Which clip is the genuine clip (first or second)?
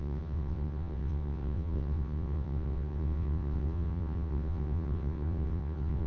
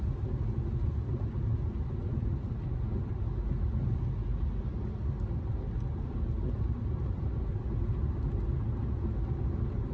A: second